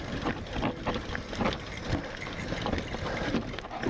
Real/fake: real